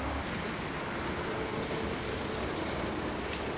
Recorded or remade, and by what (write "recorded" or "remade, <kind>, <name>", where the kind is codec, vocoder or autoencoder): recorded